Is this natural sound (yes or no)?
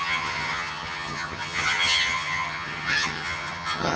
no